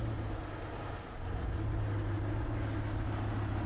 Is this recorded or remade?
recorded